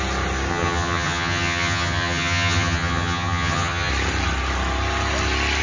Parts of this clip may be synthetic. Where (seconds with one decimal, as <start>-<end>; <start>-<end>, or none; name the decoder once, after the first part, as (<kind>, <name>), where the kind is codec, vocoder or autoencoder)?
0.5-3.9 (vocoder, HiFi-GAN)